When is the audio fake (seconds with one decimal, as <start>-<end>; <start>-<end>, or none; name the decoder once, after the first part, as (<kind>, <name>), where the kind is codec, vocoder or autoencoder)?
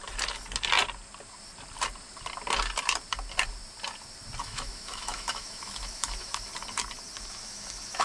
4.4-6.5 (autoencoder, DAC-VAE); 7.2-8.0